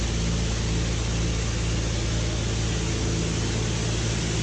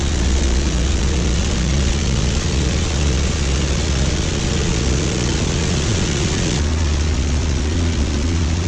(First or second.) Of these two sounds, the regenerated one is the second